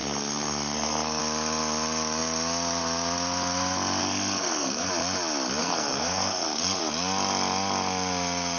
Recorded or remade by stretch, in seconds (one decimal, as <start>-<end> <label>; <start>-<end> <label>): 0.0-1.2 remade; 1.2-4.0 recorded; 4.0-4.9 remade; 4.9-5.6 recorded; 5.6-6.8 remade; 6.8-8.6 recorded